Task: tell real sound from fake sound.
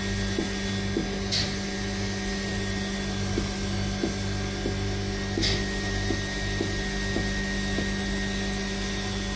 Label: real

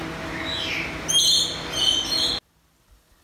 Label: real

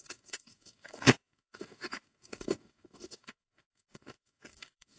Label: fake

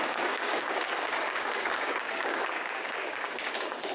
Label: fake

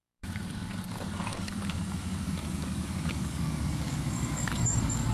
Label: fake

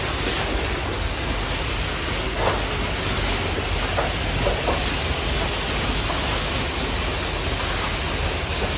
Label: real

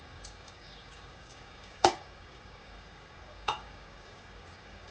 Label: fake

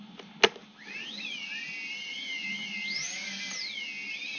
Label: real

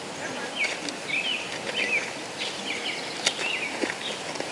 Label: real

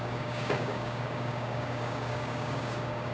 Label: fake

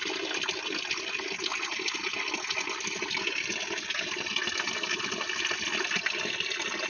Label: real